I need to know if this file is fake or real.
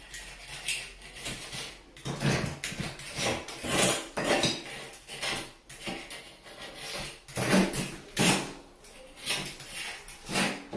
real